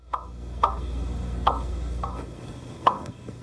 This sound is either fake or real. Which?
fake